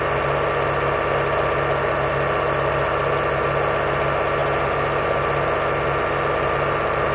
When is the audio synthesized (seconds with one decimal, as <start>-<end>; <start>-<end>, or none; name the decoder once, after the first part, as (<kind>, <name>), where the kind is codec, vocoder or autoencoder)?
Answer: none